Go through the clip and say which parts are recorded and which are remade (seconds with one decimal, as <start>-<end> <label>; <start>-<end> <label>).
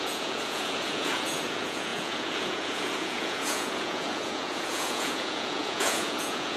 0.0-6.6 remade